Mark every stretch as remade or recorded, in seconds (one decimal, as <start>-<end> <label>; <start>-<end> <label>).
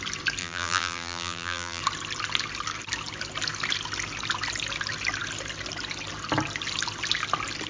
0.0-0.4 recorded; 0.4-1.8 remade; 1.8-7.7 recorded